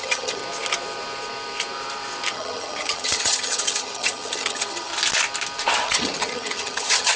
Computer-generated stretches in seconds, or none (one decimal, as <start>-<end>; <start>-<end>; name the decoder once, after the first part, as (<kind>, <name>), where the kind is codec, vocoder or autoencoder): 0.0-0.4 (vocoder, HiFi-GAN); 2.3-4.9; 5.7-7.2